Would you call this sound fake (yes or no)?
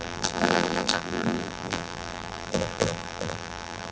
yes